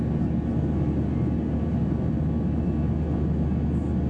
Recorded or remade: recorded